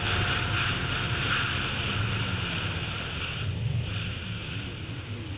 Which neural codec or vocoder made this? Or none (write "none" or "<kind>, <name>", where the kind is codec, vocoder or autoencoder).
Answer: none